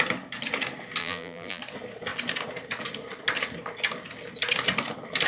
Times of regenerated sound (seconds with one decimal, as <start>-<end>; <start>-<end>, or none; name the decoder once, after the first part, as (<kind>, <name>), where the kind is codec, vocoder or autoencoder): 1.0-1.6 (vocoder, BigVGAN v2)